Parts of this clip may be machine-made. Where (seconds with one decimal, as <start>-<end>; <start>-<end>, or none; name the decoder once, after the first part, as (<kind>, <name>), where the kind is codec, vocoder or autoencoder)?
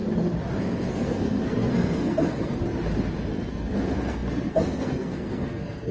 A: 0.6-2.6 (codec, SNAC); 3.5-5.9